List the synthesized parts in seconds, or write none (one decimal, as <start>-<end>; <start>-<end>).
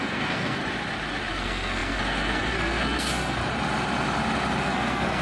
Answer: 0.0-0.6; 1.3-3.4; 4.6-5.2